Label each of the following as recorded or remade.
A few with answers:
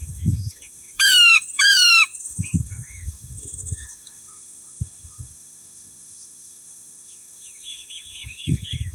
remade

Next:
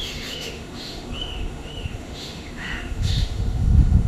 remade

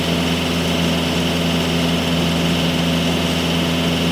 recorded